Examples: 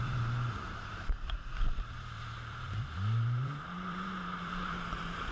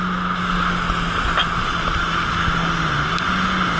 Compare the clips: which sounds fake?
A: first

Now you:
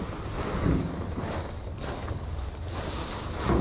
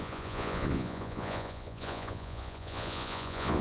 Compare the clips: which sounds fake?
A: second